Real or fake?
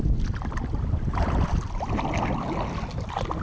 real